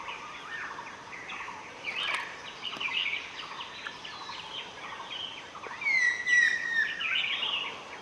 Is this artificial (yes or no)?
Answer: no